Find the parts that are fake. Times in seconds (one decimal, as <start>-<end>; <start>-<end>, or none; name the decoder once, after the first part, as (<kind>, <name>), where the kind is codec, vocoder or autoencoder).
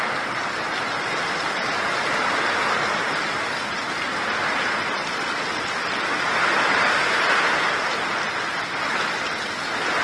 none